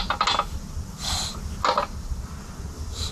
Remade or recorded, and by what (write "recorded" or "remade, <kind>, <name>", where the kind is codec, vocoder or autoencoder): recorded